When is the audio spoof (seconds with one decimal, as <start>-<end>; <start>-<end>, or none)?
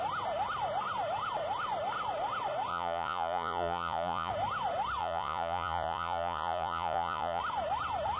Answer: 2.7-4.3; 5.0-7.4